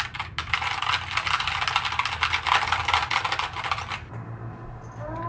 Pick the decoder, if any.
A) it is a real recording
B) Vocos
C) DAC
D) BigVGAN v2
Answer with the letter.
A